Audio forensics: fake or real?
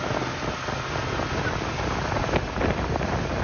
real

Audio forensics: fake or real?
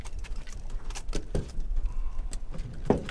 real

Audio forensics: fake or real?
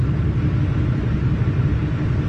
real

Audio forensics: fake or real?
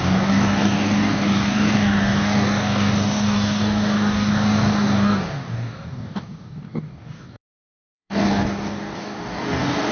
fake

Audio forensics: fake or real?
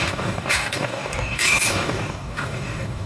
fake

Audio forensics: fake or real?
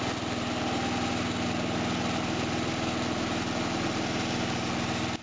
real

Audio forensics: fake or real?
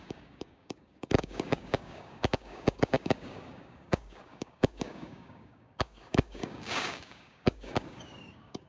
fake